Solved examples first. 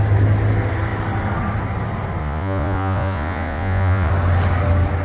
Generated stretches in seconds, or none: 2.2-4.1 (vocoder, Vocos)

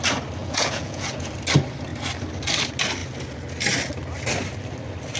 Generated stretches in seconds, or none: 0.4-1.3 (vocoder, Vocos)